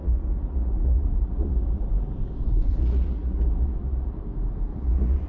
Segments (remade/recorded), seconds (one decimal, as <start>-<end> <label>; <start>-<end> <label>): 0.0-1.8 remade; 1.8-2.7 recorded; 2.7-4.2 remade; 4.2-4.7 recorded; 4.7-5.3 remade